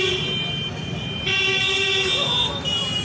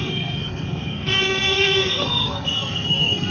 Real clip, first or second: first